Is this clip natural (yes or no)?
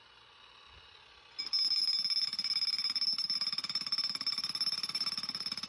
yes